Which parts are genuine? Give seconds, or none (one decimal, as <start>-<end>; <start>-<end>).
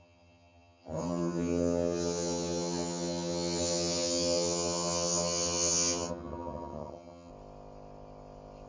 7.3-8.7